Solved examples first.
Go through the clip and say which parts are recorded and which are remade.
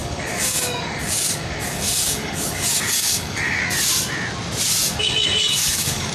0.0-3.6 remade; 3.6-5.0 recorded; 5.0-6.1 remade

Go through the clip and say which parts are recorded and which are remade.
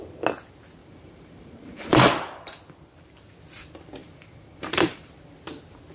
0.0-0.8 recorded; 0.8-2.1 remade; 2.1-4.0 recorded; 4.0-5.1 remade; 5.1-5.9 recorded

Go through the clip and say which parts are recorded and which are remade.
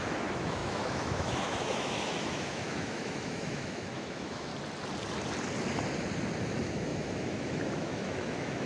0.0-4.5 remade; 4.5-6.4 recorded; 6.4-8.7 remade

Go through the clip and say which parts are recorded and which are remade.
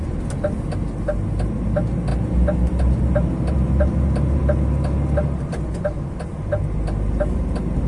0.0-7.9 recorded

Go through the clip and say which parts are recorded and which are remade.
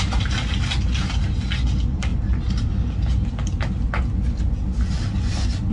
0.0-5.7 recorded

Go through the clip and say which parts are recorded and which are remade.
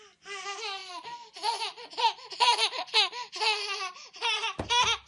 0.0-5.1 recorded